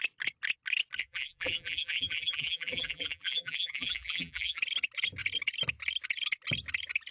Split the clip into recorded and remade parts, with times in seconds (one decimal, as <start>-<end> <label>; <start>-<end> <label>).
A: 0.0-1.0 recorded; 1.0-4.6 remade; 4.6-7.1 recorded